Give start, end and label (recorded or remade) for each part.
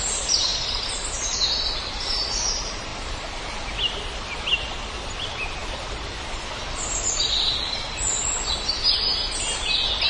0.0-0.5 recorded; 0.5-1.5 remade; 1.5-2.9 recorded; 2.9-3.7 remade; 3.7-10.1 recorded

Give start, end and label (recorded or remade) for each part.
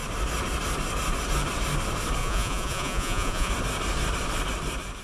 0.0-2.2 recorded; 2.2-3.5 remade; 3.5-5.0 recorded